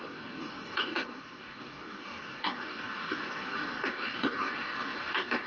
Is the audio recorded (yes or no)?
no